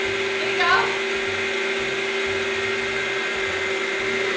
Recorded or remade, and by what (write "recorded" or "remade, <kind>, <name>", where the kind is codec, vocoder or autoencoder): recorded